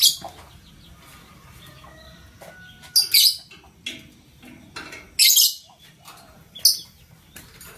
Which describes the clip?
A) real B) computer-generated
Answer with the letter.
A